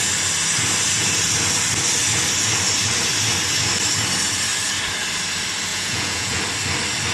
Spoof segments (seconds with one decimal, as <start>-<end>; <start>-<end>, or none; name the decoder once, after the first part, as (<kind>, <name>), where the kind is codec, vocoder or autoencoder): 5.7-6.4 (vocoder, Vocos)